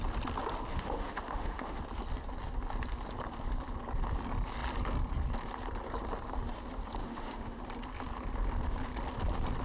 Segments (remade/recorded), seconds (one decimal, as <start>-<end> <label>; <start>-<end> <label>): 0.0-0.7 recorded; 0.7-1.8 remade; 1.8-7.0 recorded; 7.0-7.6 remade; 7.6-9.6 recorded